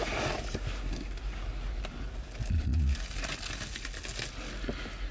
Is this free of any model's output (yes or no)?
yes